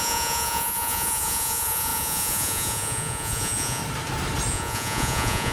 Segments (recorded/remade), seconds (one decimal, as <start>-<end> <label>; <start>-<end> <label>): 0.0-3.8 remade; 3.8-4.5 recorded; 4.5-5.5 remade

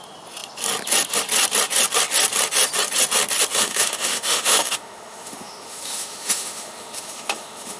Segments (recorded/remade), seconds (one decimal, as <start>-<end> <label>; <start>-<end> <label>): 0.0-3.5 recorded; 3.5-7.8 remade

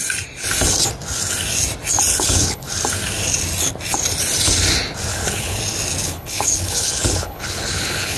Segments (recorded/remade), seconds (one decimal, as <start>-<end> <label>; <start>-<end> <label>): 0.0-2.1 recorded; 2.1-2.7 remade; 2.7-5.1 recorded; 5.1-5.6 remade; 5.6-6.0 recorded; 6.0-8.2 remade

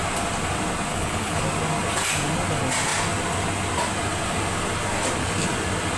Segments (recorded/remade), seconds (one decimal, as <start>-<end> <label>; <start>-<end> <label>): 0.0-0.9 recorded; 0.9-1.4 remade; 1.4-6.0 recorded

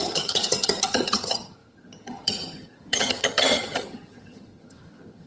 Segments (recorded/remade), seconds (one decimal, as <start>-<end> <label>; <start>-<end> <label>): 0.0-5.3 remade